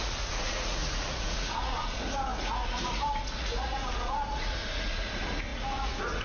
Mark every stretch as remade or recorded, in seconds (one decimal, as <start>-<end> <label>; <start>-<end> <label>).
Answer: 0.0-6.2 remade